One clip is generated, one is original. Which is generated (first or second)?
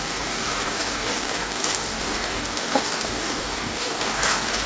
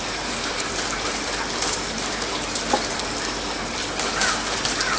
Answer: first